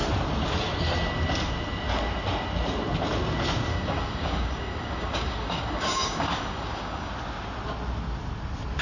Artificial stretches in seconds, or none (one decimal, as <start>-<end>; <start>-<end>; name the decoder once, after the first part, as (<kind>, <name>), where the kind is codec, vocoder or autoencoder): 3.7-7.1 (codec, DAC)